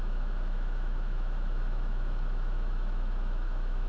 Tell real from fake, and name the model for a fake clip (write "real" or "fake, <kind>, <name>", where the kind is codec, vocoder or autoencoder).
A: fake, autoencoder, DAC-VAE